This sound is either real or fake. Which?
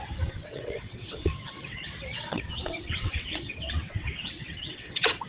fake